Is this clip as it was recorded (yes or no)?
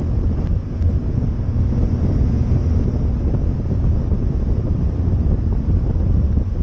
yes